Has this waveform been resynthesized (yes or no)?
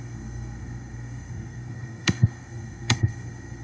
yes